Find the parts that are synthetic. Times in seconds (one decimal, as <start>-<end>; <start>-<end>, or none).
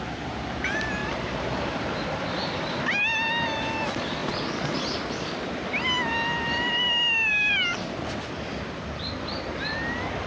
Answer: 1.0-1.9